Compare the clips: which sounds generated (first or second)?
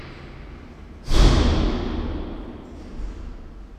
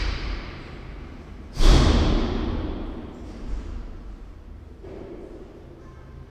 second